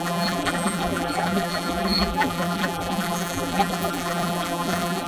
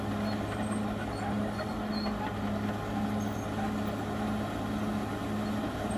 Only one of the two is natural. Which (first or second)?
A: second